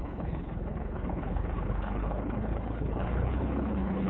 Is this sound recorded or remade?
remade